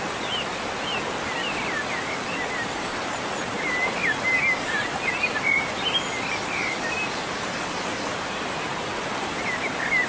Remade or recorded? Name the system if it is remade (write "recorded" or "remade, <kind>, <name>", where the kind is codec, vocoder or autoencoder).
recorded